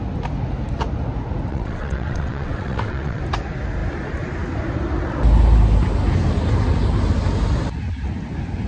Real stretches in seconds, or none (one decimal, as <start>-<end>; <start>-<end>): 0.0-1.5; 3.2-8.7